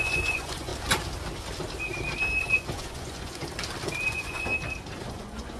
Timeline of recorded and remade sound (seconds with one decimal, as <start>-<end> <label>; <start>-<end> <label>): 0.0-0.7 remade; 0.7-2.4 recorded; 2.4-3.4 remade; 3.4-4.1 recorded; 4.1-4.5 remade; 4.5-5.1 recorded; 5.1-5.6 remade